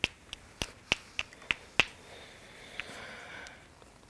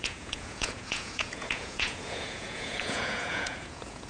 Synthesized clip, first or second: second